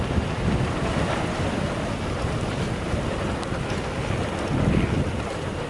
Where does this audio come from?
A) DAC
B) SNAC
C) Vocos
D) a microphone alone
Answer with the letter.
D